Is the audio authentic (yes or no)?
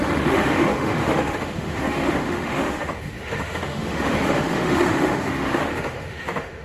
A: no